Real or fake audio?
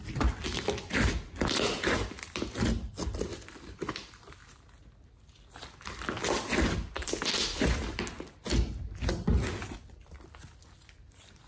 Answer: real